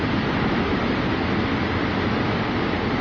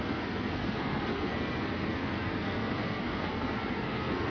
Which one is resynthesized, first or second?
second